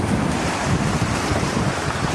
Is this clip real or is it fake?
fake